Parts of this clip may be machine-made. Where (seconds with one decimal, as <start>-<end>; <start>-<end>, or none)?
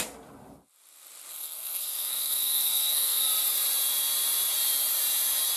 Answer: 1.3-3.2